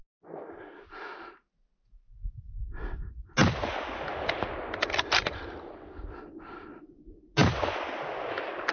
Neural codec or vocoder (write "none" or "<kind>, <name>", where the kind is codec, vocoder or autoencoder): none